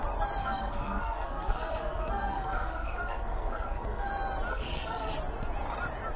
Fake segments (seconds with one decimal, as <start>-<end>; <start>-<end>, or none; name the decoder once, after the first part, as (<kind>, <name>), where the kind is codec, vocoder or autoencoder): 0.4-4.1 (codec, SNAC); 4.5-5.1